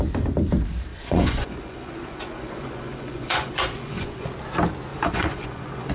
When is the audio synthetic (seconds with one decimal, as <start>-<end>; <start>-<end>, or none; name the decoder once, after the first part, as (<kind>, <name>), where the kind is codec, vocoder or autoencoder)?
0.9-4.3 (vocoder, Vocos); 4.9-5.9